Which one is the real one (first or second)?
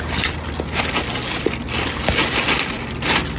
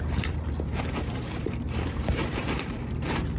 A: first